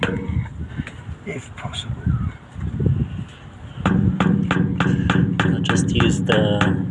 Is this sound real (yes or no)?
yes